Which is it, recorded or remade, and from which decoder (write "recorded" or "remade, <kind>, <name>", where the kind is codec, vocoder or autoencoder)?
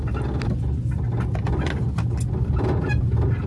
recorded